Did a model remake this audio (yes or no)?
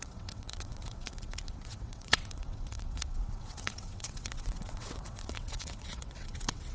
yes